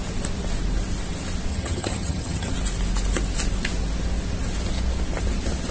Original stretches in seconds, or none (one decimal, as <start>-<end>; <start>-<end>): 0.0-1.5; 2.5-5.7